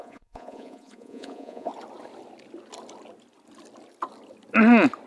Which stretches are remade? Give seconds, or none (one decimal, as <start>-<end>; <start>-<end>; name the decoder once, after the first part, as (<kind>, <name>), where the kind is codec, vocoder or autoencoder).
0.0-1.7 (vocoder, Vocos)